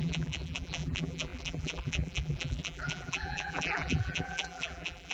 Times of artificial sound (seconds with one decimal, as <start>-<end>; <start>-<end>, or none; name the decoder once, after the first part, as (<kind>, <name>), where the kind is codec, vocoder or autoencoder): 0.0-5.1 (vocoder, BigVGAN v2)